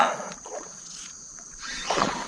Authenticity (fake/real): fake